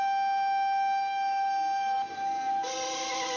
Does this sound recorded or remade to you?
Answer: recorded